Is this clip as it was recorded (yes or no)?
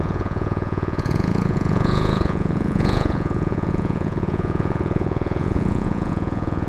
no